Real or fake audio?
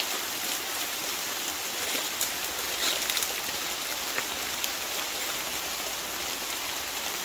real